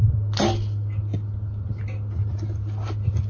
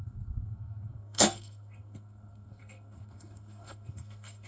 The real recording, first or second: first